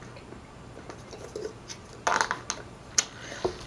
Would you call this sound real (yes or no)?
yes